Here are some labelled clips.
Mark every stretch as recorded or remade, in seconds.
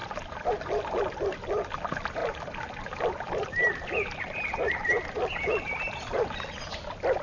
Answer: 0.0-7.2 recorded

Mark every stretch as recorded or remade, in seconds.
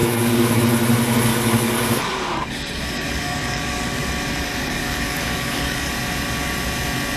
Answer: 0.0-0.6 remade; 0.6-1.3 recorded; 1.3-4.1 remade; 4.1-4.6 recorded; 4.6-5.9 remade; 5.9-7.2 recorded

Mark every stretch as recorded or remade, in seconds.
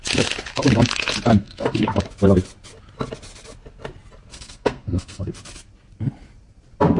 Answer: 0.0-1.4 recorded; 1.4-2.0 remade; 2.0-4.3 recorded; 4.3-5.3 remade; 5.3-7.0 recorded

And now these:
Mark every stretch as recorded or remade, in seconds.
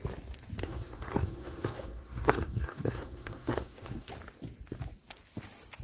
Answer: 0.0-0.6 recorded; 0.6-4.1 remade; 4.1-5.8 recorded